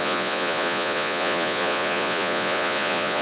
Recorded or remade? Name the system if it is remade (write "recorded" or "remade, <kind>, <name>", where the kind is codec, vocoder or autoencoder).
remade, vocoder, Vocos